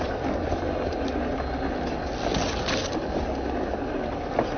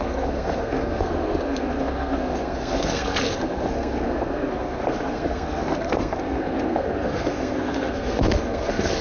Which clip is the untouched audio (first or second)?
first